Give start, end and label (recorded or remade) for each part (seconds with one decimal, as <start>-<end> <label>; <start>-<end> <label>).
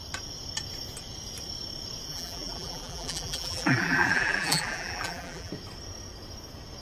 0.0-2.1 recorded; 2.1-5.5 remade; 5.5-6.8 recorded